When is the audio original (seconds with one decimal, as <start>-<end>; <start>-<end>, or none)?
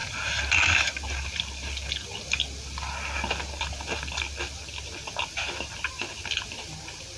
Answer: 0.0-7.2